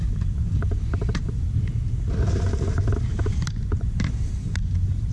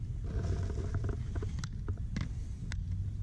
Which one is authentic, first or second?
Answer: second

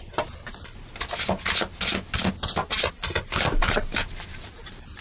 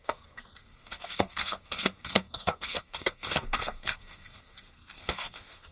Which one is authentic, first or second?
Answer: first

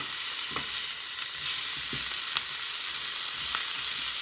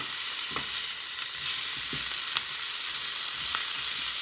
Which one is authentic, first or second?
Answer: first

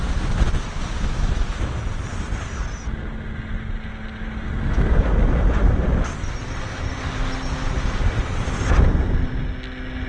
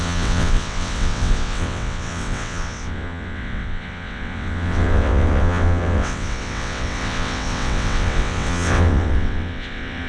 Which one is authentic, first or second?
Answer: first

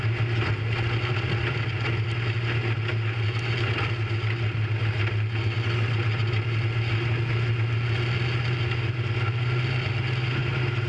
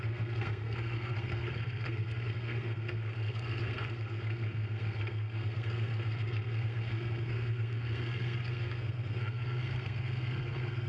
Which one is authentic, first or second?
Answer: first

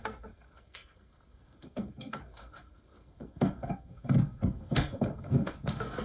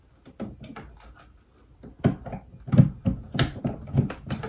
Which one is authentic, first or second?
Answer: second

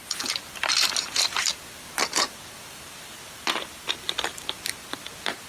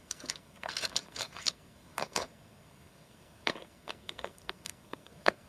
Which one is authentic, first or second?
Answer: first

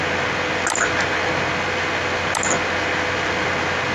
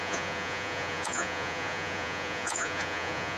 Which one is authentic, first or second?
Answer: first